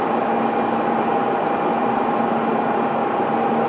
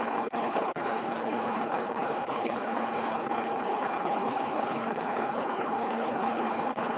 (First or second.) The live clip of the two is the first